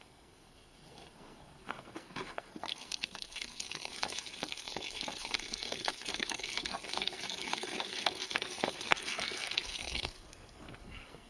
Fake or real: fake